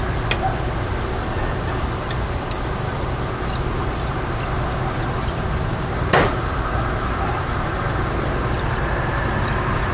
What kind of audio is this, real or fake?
real